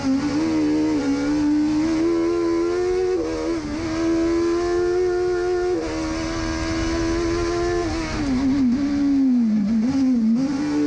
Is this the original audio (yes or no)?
yes